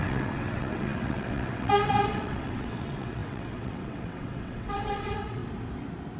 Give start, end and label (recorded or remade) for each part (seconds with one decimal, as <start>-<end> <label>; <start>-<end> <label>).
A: 0.0-5.4 remade; 5.4-6.2 recorded